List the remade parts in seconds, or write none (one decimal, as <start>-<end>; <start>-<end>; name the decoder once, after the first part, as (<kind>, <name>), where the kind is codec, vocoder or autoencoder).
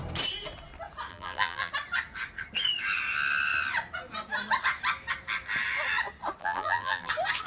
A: 1.1-1.7 (vocoder, BigVGAN v2); 6.4-7.1